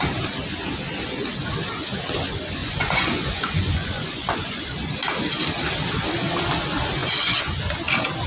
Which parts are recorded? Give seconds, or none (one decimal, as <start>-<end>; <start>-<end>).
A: 0.0-2.6; 4.6-7.0; 7.5-8.3